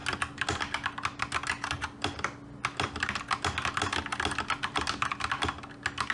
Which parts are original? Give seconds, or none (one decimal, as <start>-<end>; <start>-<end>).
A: 0.0-6.1

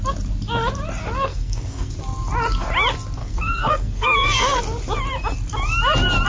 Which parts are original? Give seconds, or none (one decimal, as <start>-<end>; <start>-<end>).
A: 0.0-1.3; 1.9-3.2; 4.6-6.3

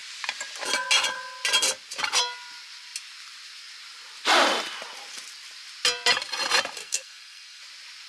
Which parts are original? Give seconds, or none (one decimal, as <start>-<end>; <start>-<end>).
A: 0.0-6.8; 7.6-8.1

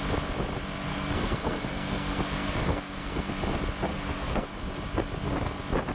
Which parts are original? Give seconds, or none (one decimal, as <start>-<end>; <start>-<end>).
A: 0.0-0.9; 3.3-3.9; 4.6-5.9

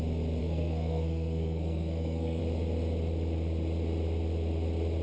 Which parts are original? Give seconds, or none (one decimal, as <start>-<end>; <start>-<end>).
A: 0.0-0.4; 2.4-5.0